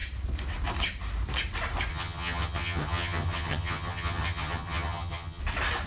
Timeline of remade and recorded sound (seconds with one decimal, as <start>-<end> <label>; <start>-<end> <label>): 0.0-1.9 recorded; 1.9-5.4 remade; 5.4-5.9 recorded